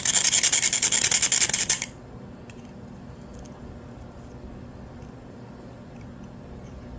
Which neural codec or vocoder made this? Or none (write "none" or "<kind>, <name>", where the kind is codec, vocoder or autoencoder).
none